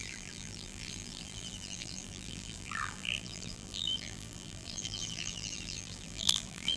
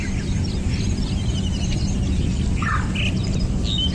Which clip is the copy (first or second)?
first